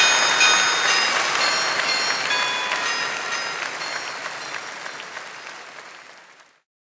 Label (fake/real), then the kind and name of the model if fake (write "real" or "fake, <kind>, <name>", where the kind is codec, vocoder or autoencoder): real